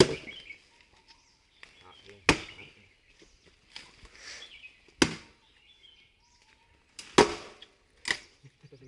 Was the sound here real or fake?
real